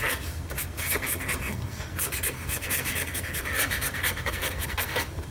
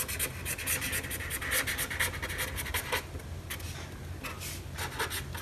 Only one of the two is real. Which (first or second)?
second